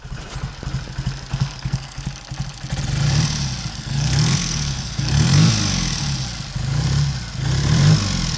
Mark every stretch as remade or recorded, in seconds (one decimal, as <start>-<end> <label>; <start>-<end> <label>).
0.0-1.3 recorded; 1.3-2.1 remade; 2.1-3.7 recorded; 3.7-5.5 remade; 5.5-8.4 recorded